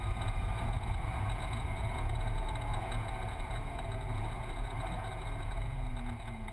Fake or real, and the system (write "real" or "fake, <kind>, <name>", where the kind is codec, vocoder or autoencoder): fake, vocoder, Vocos